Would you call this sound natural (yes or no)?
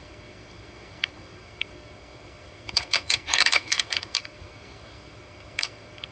no